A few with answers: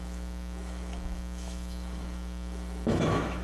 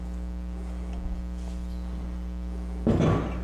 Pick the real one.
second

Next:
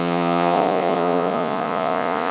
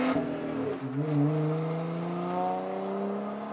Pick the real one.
second